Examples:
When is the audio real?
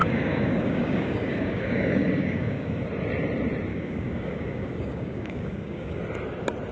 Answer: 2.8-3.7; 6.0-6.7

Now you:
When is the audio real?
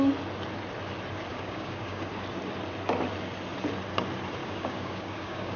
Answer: 0.0-1.3; 2.1-4.4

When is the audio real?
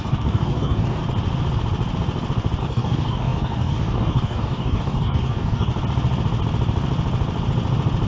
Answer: 1.0-2.6; 5.7-8.1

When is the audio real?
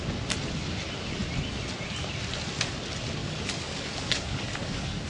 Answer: 0.0-3.2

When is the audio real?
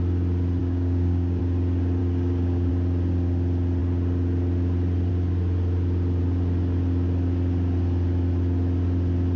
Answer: 0.0-0.6; 1.4-2.0; 2.7-9.4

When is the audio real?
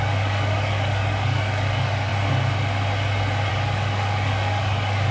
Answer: 2.1-3.5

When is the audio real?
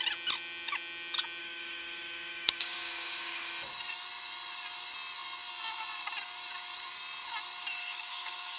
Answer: 0.0-1.4; 3.5-7.8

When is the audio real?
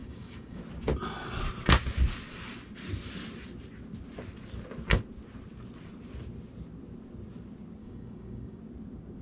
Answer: 0.6-7.8; 8.6-9.2